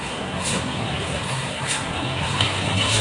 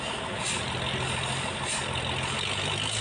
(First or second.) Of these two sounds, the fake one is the first